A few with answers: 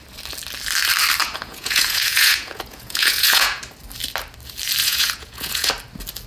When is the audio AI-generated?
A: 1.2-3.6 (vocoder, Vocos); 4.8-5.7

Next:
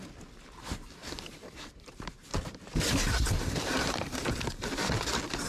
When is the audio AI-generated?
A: 1.0-4.3 (vocoder, BigVGAN v2)

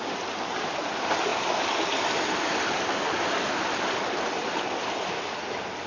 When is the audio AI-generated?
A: none

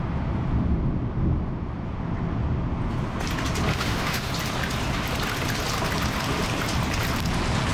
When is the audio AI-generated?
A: 3.7-4.3 (autoencoder, DAC-VAE)

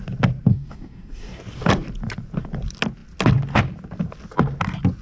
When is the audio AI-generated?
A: 0.5-1.4 (codec, DAC)

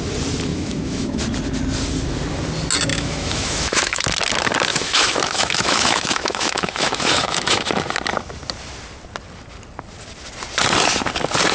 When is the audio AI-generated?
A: 0.5-1.2 (autoencoder, DAC-VAE); 2.9-4.0; 4.7-7.7